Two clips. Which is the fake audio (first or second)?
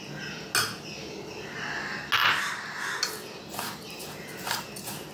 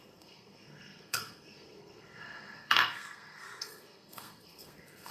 second